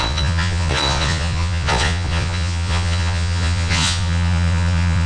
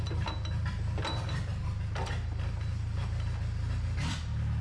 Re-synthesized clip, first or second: first